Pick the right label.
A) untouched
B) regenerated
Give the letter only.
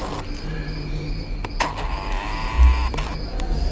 A